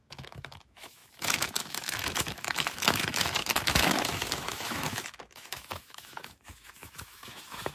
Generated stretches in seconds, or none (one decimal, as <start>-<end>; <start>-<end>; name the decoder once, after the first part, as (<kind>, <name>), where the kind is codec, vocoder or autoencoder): 0.0-7.7 (autoencoder, DAC-VAE)